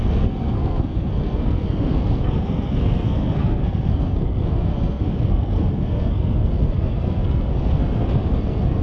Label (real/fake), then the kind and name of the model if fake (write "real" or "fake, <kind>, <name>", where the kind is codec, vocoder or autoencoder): fake, codec, SNAC